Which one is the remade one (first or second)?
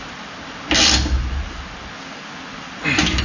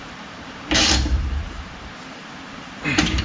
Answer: second